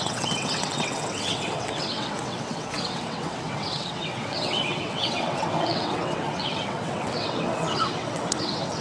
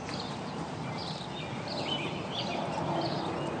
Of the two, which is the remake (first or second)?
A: first